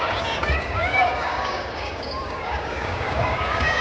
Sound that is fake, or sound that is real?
fake